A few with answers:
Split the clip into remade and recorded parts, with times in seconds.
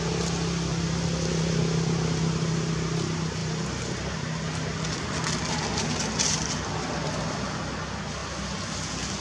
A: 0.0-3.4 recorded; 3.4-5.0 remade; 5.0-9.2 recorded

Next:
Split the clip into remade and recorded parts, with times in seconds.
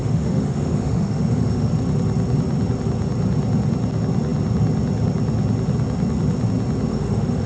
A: 0.0-1.7 remade; 1.7-6.9 recorded; 6.9-7.5 remade